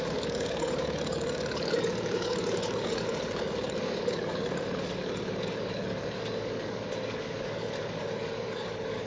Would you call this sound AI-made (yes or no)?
yes